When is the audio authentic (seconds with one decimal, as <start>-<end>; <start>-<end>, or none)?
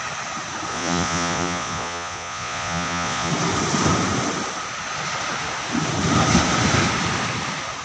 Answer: 0.0-0.7; 3.3-7.8